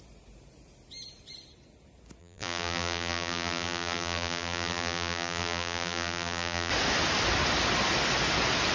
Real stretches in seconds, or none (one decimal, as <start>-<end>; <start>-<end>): 0.0-2.2; 6.7-8.7